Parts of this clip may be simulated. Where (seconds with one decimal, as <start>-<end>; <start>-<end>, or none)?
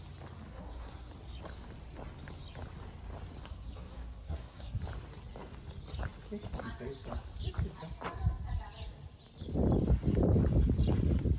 0.5-1.1; 3.4-4.8